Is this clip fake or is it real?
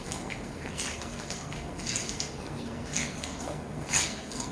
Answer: fake